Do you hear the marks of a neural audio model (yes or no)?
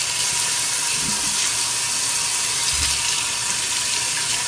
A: no